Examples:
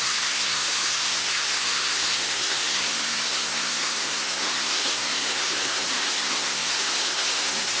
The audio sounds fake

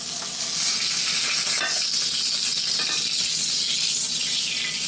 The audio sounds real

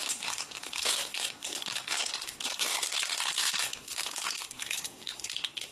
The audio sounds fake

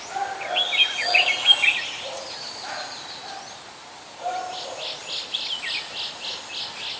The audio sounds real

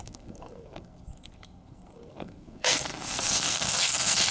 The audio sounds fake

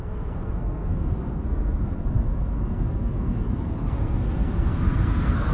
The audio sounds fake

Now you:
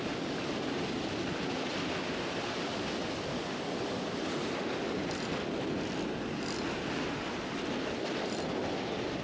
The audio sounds real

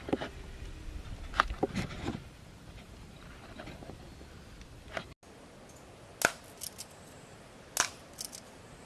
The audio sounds real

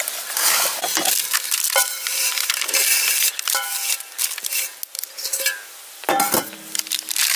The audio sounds real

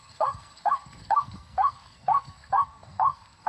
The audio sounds fake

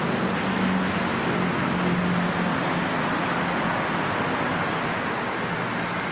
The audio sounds real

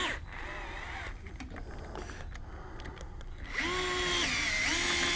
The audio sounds real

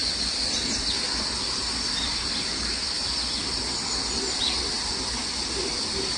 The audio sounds real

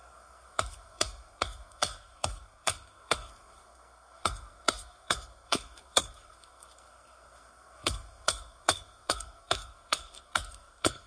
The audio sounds fake